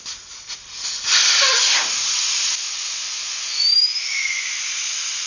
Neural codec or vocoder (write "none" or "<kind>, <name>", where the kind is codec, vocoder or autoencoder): none